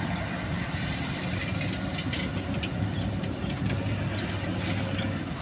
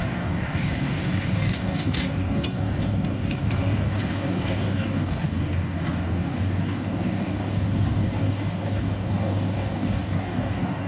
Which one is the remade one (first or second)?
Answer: second